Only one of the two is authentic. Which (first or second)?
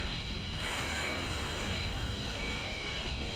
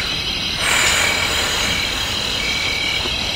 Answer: second